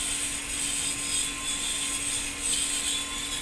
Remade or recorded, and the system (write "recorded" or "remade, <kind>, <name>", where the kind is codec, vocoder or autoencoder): recorded